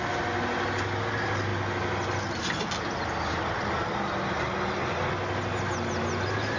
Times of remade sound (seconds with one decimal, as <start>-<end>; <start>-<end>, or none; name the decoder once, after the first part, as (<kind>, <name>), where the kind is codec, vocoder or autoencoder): none